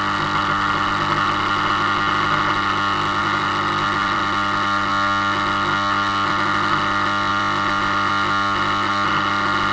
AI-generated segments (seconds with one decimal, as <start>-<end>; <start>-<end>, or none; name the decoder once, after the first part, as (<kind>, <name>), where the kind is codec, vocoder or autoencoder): 3.2-4.2 (vocoder, BigVGAN v2); 7.3-8.1